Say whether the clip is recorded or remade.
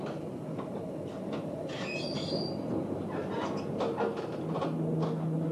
recorded